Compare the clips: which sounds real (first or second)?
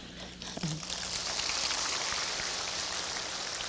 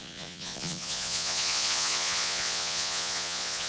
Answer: first